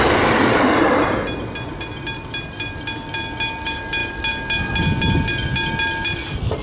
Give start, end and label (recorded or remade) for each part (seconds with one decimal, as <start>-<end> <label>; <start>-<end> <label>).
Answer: 0.0-6.6 recorded